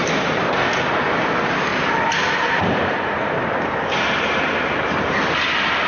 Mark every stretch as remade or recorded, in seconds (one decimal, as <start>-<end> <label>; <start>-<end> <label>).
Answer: 0.0-0.6 remade; 0.6-1.7 recorded; 1.7-5.2 remade; 5.2-5.9 recorded

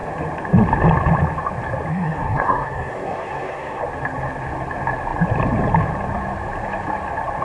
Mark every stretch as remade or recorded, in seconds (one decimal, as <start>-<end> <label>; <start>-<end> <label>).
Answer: 0.0-1.9 recorded; 1.9-3.8 remade; 3.8-7.4 recorded

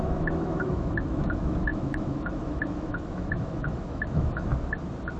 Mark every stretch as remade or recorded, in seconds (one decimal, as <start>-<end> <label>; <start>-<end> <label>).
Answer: 0.0-4.5 remade; 4.5-5.2 recorded

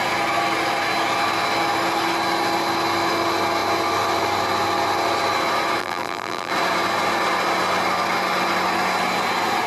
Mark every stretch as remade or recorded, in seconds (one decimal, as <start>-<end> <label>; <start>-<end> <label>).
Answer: 0.0-5.8 recorded; 5.8-6.5 remade; 6.5-9.7 recorded

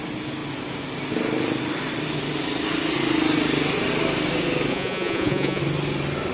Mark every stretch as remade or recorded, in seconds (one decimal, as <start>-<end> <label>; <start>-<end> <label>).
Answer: 0.0-4.7 recorded; 4.7-5.6 remade; 5.6-6.3 recorded

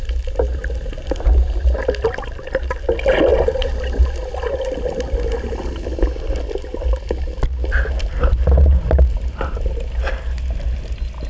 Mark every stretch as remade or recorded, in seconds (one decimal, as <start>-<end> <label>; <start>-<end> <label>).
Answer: 0.0-11.3 recorded

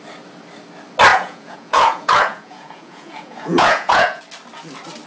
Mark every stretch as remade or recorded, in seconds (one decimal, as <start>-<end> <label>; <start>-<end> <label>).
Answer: 0.0-1.1 recorded; 1.1-4.2 remade; 4.2-5.1 recorded

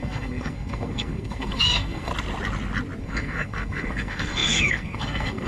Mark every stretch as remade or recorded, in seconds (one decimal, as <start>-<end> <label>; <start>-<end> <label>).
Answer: 0.0-2.1 remade; 2.1-3.0 recorded; 3.0-5.5 remade